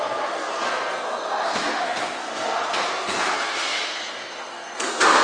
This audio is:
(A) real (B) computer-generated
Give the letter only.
B